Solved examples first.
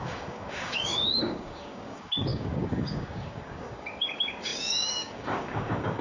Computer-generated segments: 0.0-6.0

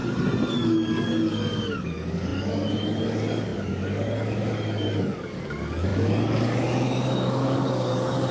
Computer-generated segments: 0.5-8.3

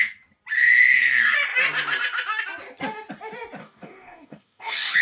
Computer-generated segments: 3.6-5.0

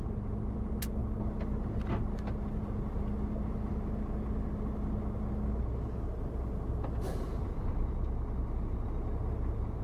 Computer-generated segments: none

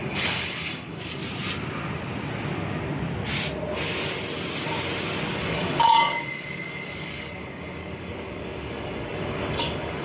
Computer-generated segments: 0.0-1.2; 5.4-10.0

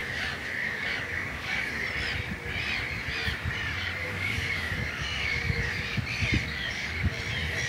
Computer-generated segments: 0.0-1.8; 4.0-6.0; 6.4-7.2

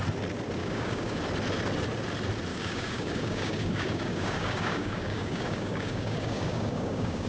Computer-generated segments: 0.6-1.2; 2.5-7.3